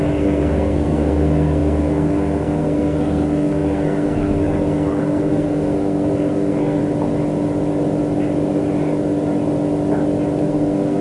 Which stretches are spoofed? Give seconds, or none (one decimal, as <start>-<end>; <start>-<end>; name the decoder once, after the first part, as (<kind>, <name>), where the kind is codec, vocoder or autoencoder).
0.0-6.8 (codec, SNAC); 10.4-11.0